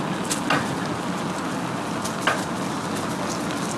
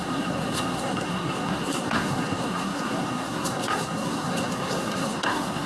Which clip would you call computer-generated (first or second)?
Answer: second